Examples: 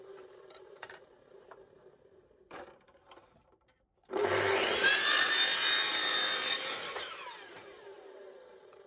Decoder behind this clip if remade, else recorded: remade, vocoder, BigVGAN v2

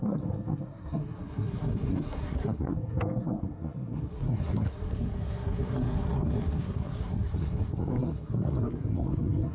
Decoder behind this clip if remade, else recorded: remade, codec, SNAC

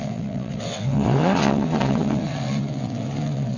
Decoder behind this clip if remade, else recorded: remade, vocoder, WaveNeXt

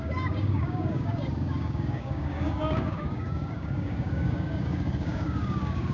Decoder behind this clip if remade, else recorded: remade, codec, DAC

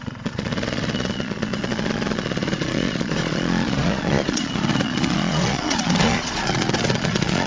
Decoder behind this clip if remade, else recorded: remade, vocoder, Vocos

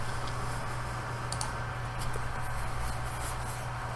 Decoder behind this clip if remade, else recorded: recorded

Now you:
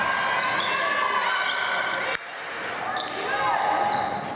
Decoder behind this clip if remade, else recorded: recorded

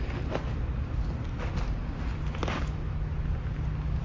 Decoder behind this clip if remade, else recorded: recorded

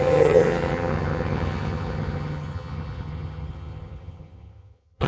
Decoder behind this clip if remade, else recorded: remade, vocoder, HiFi-GAN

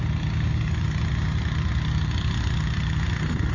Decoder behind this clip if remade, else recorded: recorded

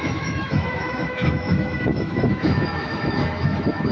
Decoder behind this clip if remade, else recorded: remade, autoencoder, DAC-VAE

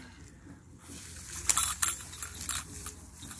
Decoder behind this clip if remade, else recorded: recorded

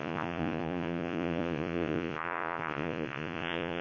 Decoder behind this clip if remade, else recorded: remade, vocoder, Vocos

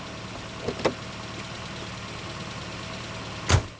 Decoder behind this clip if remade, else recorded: recorded